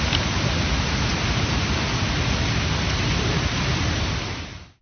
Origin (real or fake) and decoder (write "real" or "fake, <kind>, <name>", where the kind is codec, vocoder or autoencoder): real